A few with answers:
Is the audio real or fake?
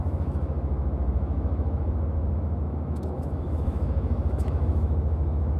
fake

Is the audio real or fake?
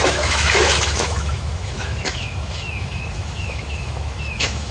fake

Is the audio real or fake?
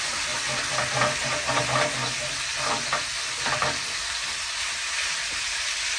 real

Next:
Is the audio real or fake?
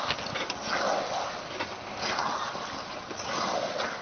real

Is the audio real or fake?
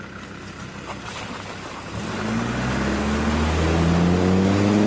real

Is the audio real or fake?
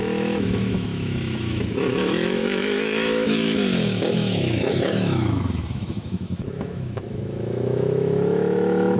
fake